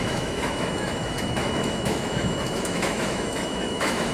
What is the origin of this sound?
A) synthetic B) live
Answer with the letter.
A